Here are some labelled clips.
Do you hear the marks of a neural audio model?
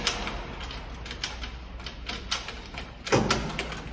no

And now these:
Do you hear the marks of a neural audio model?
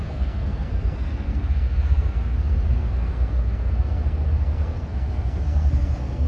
yes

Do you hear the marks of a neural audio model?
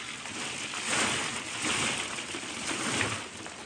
no